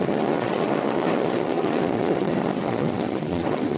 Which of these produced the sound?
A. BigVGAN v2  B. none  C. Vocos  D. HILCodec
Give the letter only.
C